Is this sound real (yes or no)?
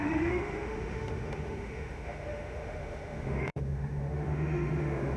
no